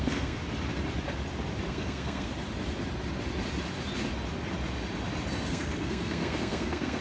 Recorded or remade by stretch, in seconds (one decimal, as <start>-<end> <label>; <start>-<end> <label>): 0.0-0.4 remade; 0.4-1.7 recorded; 1.7-2.3 remade; 2.3-5.5 recorded; 5.5-7.0 remade